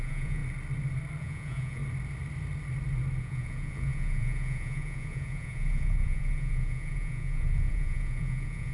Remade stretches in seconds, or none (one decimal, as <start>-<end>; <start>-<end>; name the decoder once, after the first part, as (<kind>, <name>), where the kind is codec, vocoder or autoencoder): 0.0-0.4 (vocoder, Vocos); 1.2-1.8; 3.2-8.7